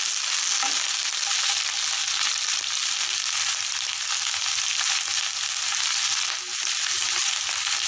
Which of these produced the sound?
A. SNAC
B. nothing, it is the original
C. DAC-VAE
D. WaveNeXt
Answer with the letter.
B